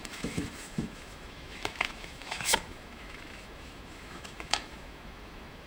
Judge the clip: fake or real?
fake